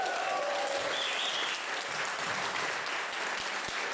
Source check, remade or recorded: recorded